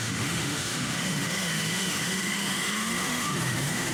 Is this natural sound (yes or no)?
no